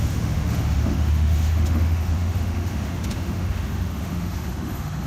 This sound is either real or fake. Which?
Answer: fake